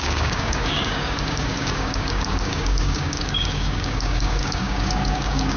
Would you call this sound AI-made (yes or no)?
yes